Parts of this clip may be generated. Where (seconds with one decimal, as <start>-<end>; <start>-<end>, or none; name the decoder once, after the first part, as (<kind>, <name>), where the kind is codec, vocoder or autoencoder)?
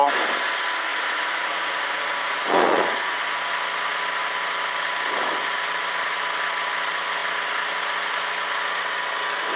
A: 0.9-3.5 (vocoder, Vocos)